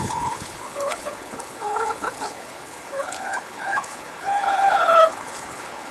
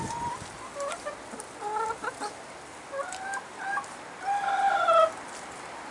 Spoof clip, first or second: first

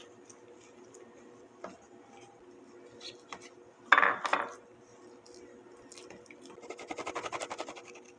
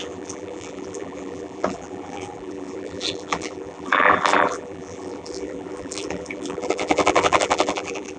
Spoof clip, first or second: second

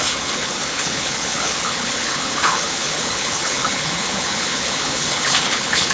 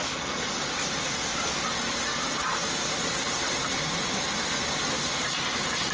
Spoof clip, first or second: first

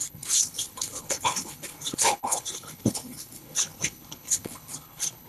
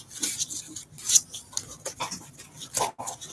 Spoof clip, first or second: first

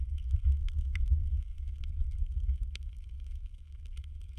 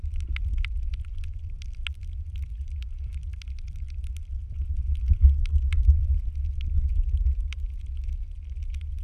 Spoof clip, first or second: first